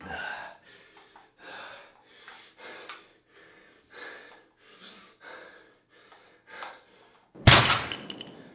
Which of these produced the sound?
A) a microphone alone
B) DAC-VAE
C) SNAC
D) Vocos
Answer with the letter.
A